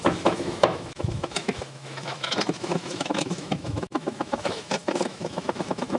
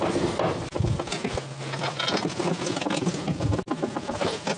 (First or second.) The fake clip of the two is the first